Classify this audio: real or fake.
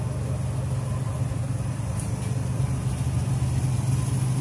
real